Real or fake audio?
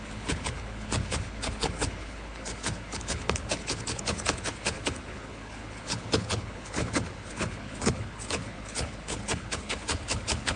fake